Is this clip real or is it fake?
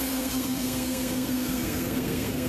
fake